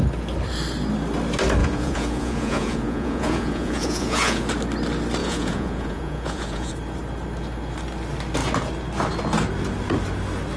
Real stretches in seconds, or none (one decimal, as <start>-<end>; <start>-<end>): 0.0-1.6; 4.5-5.2; 6.7-10.6